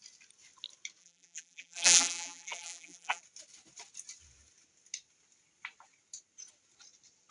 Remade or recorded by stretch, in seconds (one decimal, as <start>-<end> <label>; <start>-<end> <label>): 0.0-1.0 recorded; 1.0-3.2 remade; 3.2-7.3 recorded